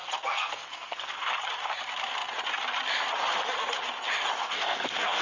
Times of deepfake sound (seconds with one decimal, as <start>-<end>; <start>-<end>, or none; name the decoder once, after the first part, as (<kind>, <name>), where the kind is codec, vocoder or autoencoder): 0.0-1.3 (codec, SNAC); 4.3-5.2